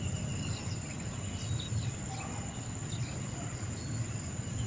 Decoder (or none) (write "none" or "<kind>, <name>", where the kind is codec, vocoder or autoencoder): none